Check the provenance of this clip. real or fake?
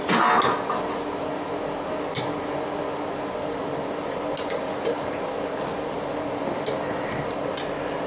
real